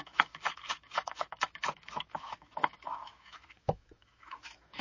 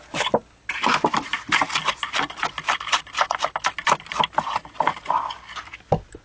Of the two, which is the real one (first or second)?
second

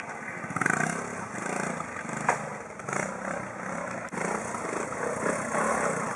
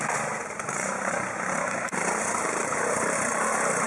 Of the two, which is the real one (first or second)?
first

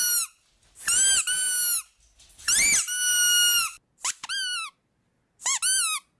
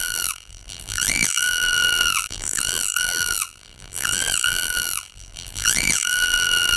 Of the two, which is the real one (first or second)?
first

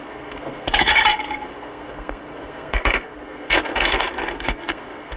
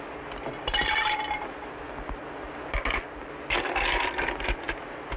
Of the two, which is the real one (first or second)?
second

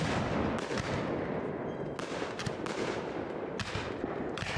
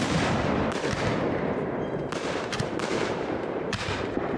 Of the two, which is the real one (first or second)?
first